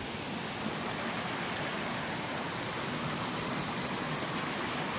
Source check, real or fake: real